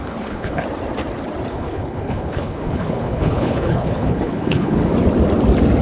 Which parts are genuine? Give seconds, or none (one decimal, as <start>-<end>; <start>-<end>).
0.6-1.5; 4.8-5.8